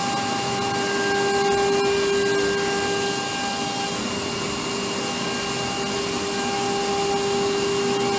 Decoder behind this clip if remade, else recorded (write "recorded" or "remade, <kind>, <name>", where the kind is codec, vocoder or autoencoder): recorded